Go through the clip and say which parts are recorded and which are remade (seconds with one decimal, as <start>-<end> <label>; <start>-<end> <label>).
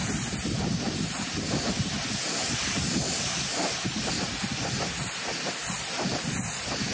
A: 0.0-6.9 recorded